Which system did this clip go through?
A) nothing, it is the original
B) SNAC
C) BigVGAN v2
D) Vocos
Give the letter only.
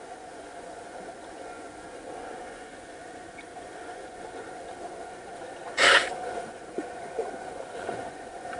D